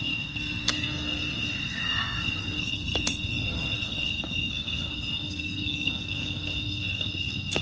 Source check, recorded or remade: remade